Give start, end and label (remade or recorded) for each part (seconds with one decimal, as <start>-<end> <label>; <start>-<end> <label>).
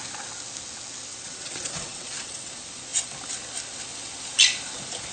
0.0-1.1 recorded; 1.1-2.5 remade; 2.5-5.1 recorded